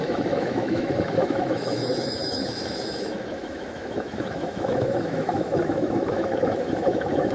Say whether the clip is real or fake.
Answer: fake